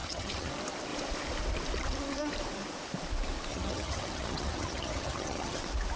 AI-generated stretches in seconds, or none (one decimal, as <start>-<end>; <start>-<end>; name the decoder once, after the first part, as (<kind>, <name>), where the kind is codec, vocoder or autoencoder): 0.0-0.5 (vocoder, HiFi-GAN); 3.5-5.6